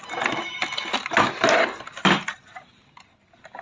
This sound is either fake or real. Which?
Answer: real